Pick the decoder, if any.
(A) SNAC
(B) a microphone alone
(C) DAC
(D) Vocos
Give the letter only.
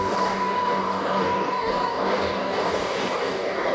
C